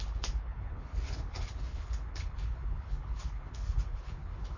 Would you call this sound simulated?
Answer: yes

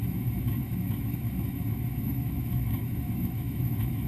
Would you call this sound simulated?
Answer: yes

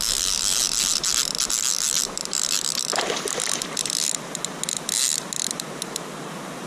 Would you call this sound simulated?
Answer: no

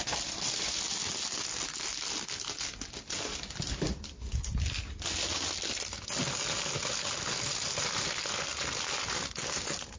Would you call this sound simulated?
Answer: no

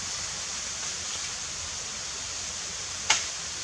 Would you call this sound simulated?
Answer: no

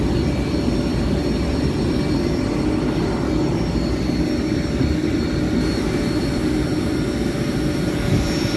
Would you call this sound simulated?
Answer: no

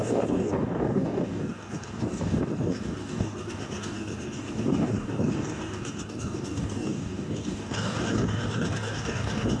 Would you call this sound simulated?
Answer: yes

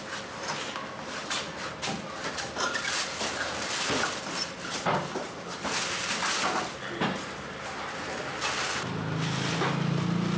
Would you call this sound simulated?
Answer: no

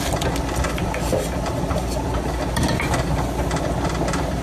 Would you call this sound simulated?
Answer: no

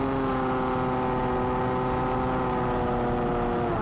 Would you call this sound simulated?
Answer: no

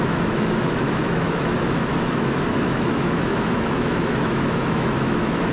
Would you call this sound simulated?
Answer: yes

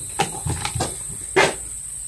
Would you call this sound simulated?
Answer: no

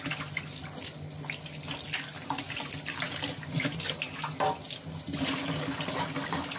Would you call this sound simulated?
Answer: no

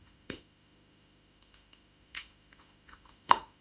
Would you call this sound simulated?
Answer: yes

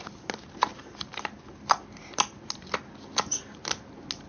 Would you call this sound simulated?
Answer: no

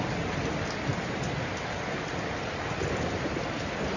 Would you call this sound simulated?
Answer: no